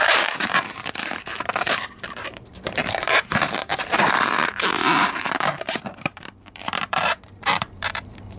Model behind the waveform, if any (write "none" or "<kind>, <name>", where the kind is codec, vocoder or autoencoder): vocoder, BigVGAN v2